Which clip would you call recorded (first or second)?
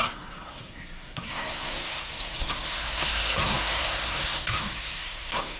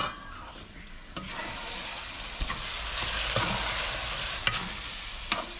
second